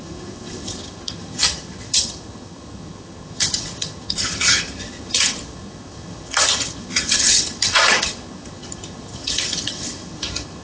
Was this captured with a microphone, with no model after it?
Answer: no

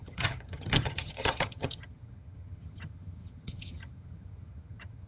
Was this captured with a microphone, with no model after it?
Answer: no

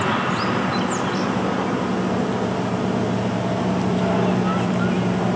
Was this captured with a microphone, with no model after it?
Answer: yes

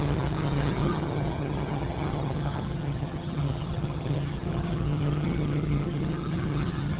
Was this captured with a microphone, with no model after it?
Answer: no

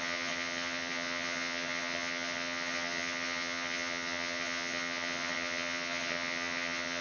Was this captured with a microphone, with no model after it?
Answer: no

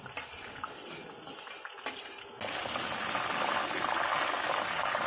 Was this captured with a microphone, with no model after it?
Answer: yes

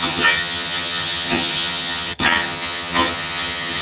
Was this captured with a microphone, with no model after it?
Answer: no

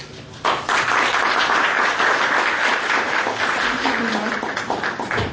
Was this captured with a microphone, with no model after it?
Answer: yes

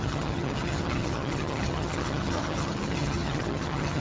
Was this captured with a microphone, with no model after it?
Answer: no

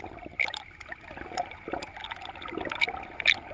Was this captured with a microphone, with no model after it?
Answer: yes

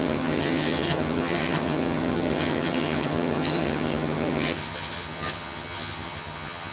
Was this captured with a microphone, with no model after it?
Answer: no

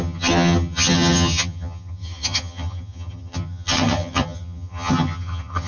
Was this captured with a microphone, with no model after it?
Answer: no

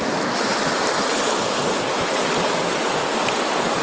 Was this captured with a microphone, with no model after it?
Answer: yes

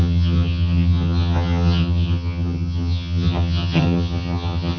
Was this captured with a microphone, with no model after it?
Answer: no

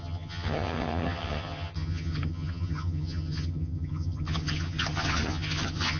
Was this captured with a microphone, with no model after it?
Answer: no